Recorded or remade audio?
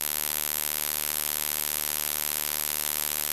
recorded